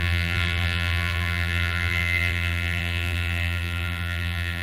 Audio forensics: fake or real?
fake